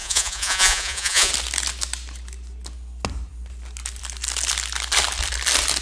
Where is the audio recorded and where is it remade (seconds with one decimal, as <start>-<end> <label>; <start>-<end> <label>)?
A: 0.0-1.3 remade; 1.3-5.8 recorded